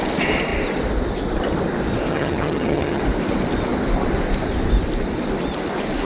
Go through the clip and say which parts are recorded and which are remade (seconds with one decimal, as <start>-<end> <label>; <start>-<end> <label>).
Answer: 0.0-2.1 recorded; 2.1-3.0 remade; 3.0-6.0 recorded